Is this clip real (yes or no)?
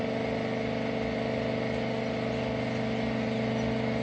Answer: yes